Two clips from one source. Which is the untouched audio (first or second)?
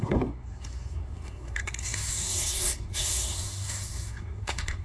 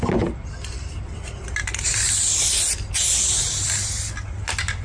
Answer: second